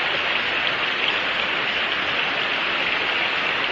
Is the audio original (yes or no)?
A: no